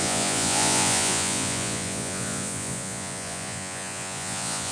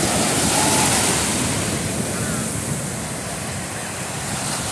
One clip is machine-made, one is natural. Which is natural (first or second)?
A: second